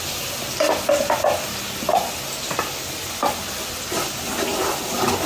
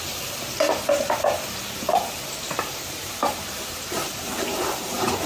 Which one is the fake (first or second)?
second